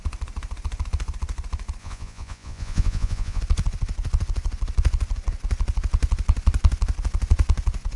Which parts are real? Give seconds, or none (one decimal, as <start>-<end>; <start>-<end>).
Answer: 0.0-1.8; 3.4-8.0